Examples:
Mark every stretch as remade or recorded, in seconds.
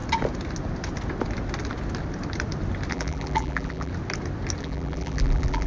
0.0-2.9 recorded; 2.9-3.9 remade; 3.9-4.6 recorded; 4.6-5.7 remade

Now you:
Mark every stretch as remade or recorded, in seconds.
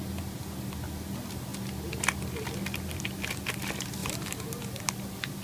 0.0-4.0 recorded; 4.0-4.6 remade; 4.6-5.4 recorded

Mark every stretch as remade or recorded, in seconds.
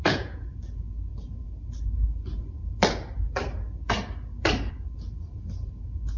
0.0-0.5 remade; 0.5-6.2 recorded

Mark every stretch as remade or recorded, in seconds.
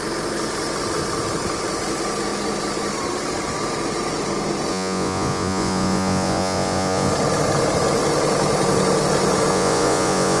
0.0-4.7 recorded; 4.7-7.1 remade; 7.1-9.5 recorded; 9.5-10.4 remade